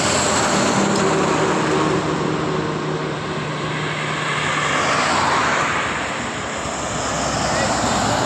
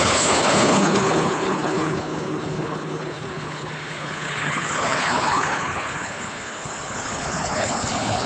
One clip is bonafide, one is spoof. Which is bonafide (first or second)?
first